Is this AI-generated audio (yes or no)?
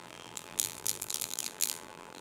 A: yes